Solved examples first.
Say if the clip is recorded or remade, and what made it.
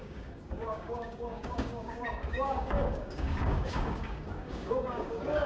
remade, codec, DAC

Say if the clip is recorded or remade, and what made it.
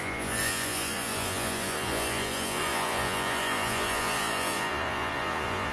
remade, vocoder, Vocos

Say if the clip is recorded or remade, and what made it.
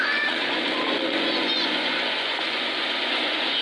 remade, vocoder, Vocos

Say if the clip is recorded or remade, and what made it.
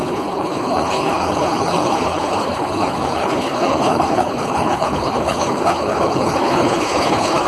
remade, codec, HILCodec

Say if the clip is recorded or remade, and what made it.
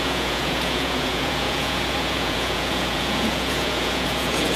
remade, vocoder, Vocos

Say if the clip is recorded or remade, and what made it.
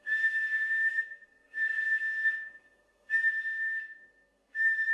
remade, codec, SNAC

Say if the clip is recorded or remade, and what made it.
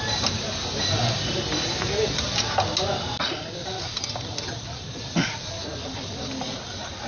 recorded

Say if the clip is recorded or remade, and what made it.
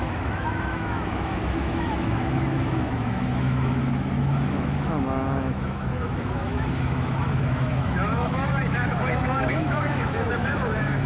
remade, autoencoder, DAC-VAE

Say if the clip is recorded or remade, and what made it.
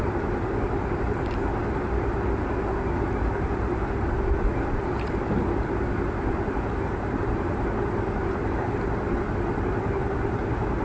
remade, vocoder, BigVGAN v2